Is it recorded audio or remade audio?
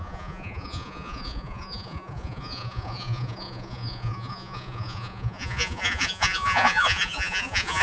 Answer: remade